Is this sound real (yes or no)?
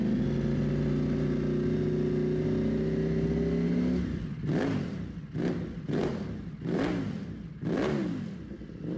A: yes